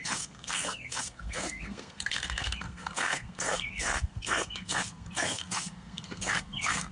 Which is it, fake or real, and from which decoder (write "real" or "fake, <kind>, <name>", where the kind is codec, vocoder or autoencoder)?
fake, codec, SNAC